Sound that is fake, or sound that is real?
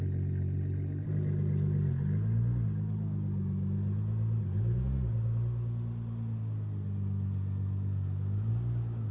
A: real